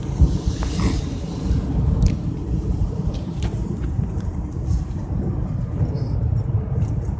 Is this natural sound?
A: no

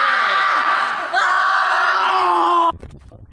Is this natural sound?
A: no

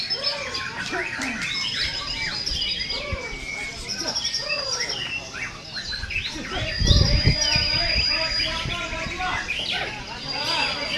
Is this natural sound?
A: yes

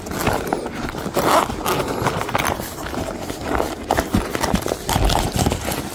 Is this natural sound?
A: yes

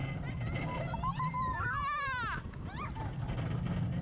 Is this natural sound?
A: yes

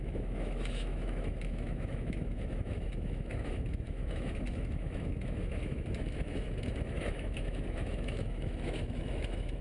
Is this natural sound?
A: no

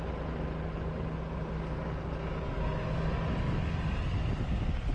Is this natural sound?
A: yes